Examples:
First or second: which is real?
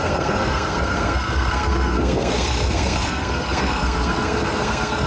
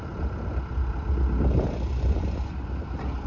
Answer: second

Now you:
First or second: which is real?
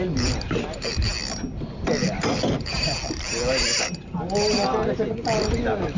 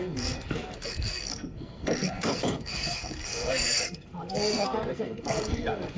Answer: first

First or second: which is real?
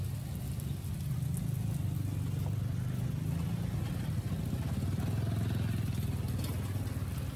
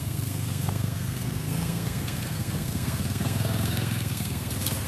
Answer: first